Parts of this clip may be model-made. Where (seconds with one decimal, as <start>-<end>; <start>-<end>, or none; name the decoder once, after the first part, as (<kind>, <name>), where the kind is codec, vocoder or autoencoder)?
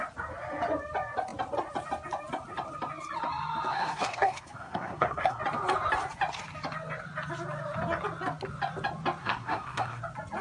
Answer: 3.7-5.4 (codec, SNAC); 9.2-10.0